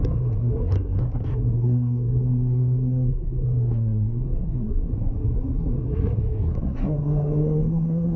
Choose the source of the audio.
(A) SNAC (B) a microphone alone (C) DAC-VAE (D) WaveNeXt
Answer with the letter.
A